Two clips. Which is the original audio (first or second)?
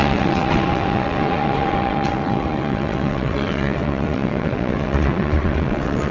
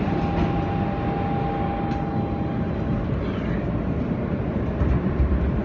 second